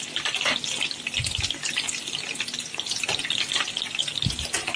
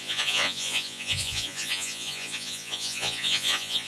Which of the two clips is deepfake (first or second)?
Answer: second